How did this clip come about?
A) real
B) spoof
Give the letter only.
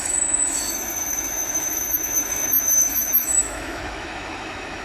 B